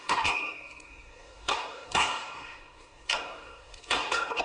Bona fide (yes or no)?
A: no